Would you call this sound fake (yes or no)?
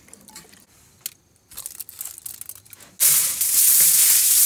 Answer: no